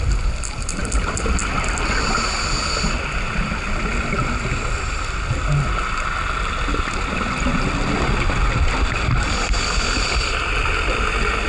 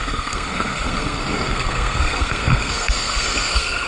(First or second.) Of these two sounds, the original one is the first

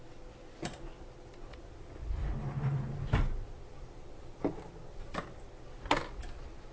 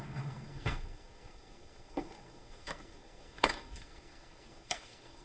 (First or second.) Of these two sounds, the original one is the first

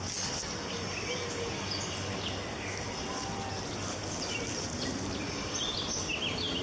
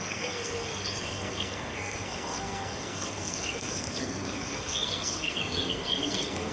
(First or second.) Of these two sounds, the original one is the first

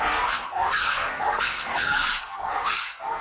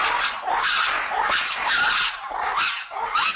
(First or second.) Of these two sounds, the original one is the second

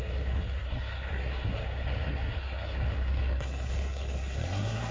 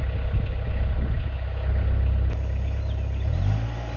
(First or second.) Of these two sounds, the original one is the second